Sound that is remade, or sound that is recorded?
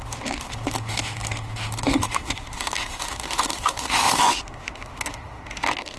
remade